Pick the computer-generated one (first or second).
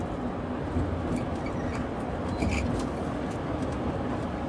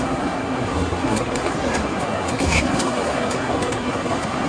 second